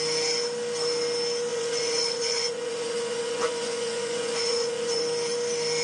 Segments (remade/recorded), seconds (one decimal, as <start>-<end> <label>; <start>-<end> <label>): 0.0-1.5 recorded; 1.5-5.0 remade; 5.0-5.8 recorded

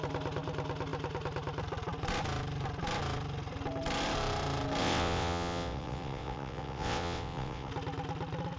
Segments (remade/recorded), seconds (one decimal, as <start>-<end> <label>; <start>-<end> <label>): 0.0-4.8 recorded; 4.8-7.7 remade; 7.7-8.6 recorded

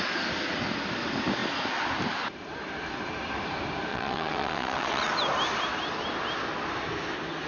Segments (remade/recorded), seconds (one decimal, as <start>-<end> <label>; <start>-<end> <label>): 0.0-3.9 recorded; 3.9-5.1 remade; 5.1-7.5 recorded

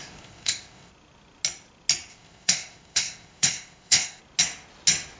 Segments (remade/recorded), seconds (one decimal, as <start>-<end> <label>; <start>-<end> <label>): 0.0-0.9 remade; 0.9-2.1 recorded; 2.1-4.2 remade; 4.2-5.2 recorded

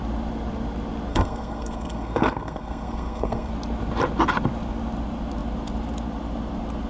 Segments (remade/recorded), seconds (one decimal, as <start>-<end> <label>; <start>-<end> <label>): 0.0-1.1 recorded; 1.1-3.5 remade; 3.5-6.9 recorded

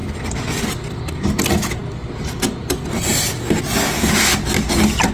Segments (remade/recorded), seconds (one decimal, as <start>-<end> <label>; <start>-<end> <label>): 0.0-5.1 recorded

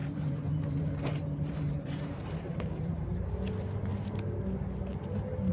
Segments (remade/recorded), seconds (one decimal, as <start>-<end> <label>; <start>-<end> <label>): 0.0-3.2 remade; 3.2-5.5 recorded